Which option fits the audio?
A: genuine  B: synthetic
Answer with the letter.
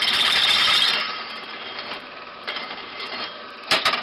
B